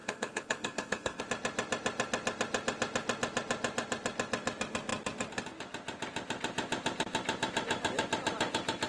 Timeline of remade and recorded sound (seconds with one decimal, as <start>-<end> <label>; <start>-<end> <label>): 0.0-1.2 remade; 1.2-8.9 recorded